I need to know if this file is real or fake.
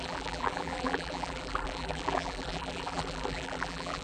fake